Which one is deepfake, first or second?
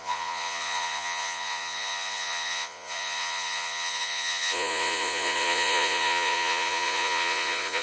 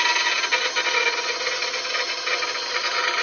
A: first